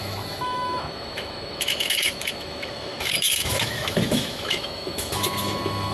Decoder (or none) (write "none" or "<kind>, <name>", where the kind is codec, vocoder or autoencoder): autoencoder, DAC-VAE